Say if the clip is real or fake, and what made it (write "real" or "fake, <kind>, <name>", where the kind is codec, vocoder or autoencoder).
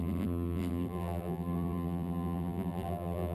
fake, vocoder, BigVGAN v2